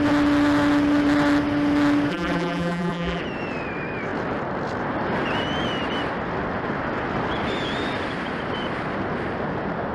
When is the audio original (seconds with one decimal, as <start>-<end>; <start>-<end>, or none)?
0.0-2.1; 3.2-9.9